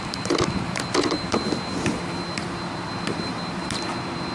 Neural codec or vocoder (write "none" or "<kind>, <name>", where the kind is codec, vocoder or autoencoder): none